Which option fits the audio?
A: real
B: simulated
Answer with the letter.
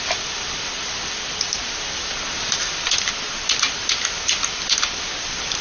B